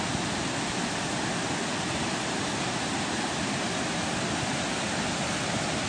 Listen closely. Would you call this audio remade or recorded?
recorded